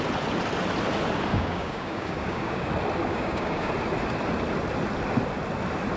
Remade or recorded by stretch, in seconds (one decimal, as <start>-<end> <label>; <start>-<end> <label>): 0.0-1.3 recorded; 1.3-2.7 remade; 2.7-3.1 recorded; 3.1-3.7 remade; 3.7-6.0 recorded